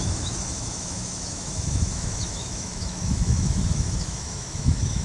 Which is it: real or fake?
fake